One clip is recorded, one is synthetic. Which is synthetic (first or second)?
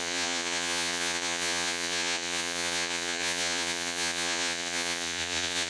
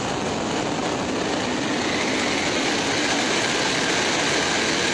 first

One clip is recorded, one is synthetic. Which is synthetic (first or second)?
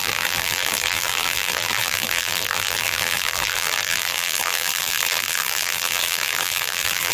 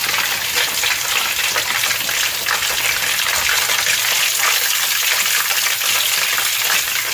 first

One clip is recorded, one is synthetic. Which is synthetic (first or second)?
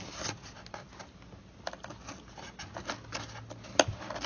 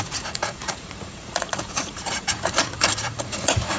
second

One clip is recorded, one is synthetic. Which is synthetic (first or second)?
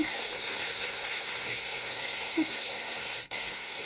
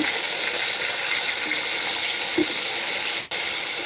first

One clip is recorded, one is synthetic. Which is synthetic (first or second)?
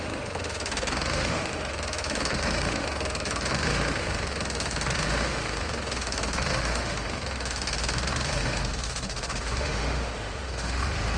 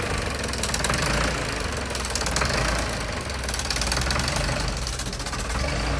first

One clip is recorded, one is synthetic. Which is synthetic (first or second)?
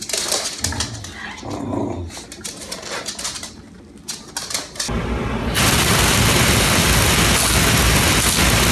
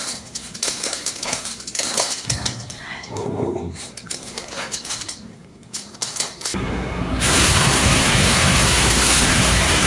second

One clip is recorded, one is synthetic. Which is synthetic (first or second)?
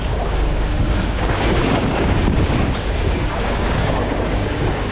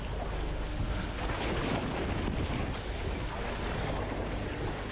first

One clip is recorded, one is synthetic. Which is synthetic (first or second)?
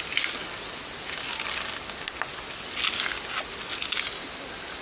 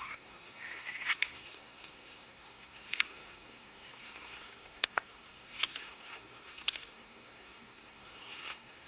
second